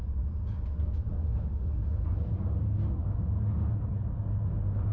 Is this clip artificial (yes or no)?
no